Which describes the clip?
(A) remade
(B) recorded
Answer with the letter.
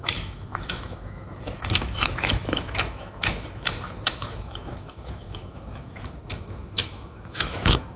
A